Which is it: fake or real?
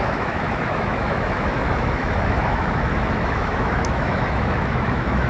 fake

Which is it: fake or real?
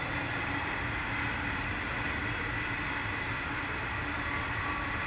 real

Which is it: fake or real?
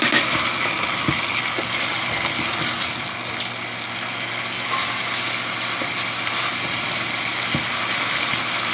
real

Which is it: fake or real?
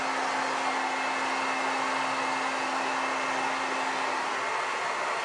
real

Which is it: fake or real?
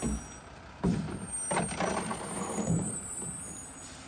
fake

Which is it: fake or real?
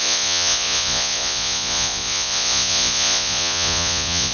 fake